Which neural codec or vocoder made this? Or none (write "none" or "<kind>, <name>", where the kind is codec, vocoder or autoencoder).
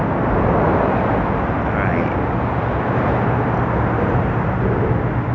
none